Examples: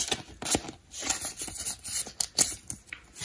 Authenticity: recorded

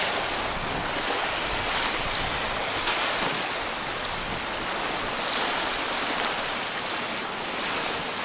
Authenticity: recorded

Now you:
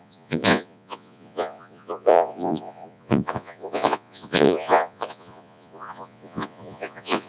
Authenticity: remade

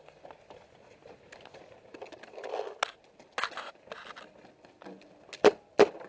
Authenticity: recorded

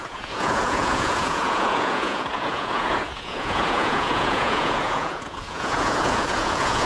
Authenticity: remade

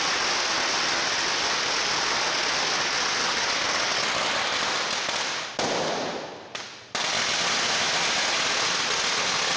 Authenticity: recorded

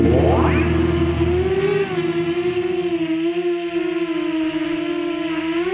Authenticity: recorded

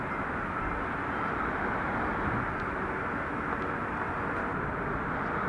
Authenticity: recorded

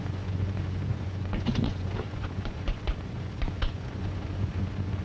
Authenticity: remade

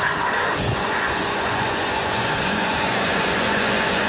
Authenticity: remade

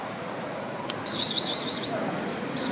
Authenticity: remade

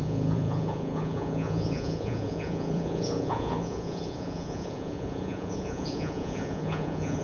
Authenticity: remade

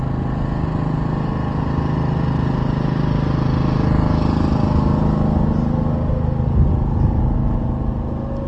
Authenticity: recorded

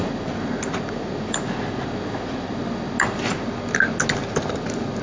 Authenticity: recorded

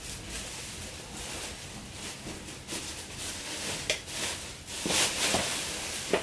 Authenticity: recorded